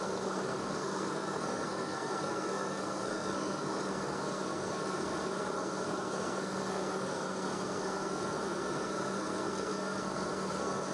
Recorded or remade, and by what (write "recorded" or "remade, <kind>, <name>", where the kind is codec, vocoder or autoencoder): remade, codec, SNAC